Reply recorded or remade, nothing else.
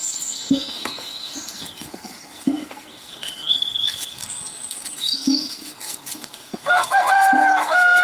remade